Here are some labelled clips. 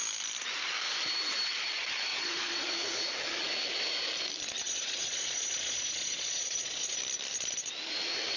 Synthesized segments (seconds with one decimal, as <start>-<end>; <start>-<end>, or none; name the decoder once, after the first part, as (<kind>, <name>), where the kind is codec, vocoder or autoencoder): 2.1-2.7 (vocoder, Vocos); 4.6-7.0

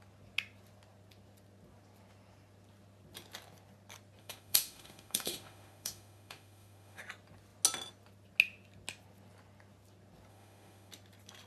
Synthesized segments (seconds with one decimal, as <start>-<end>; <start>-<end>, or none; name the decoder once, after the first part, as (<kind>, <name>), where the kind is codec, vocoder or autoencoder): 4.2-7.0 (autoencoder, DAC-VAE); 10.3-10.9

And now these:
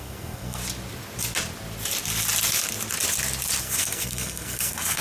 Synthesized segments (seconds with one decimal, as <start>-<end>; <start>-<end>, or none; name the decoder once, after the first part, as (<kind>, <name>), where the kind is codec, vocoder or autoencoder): 0.0-0.6 (codec, SNAC); 3.6-5.0

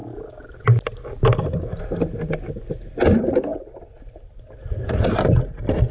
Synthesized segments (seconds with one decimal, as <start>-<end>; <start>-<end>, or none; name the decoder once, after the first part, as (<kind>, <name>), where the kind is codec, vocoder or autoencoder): none